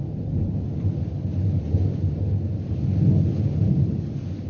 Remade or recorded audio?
recorded